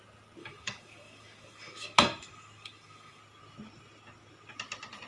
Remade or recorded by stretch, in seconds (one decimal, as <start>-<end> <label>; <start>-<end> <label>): 0.0-0.4 recorded; 0.4-3.2 remade; 3.2-5.1 recorded